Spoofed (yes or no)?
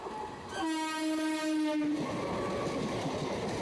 no